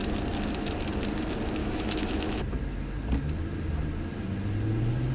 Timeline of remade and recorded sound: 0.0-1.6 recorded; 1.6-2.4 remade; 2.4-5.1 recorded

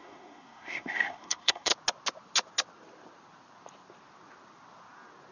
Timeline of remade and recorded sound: 0.0-1.7 remade; 1.7-5.3 recorded

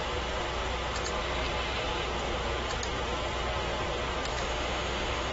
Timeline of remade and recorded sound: 0.0-4.3 recorded; 4.3-5.3 remade